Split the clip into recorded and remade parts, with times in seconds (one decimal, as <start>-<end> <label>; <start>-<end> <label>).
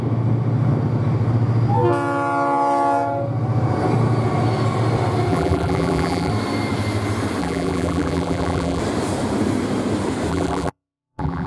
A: 0.0-5.3 recorded; 5.3-6.3 remade; 6.3-7.4 recorded; 7.4-8.8 remade; 8.8-10.3 recorded; 10.3-11.5 remade